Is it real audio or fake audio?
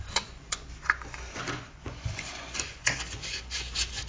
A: fake